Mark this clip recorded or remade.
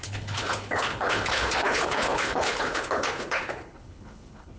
remade